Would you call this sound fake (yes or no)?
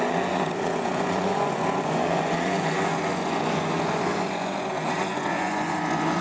yes